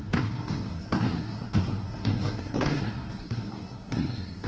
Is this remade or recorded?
remade